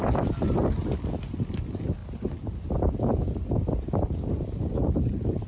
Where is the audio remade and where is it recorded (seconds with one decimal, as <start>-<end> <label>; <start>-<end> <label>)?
0.0-5.5 recorded